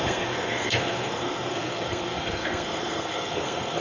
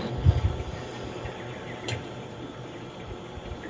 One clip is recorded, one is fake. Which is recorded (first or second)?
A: second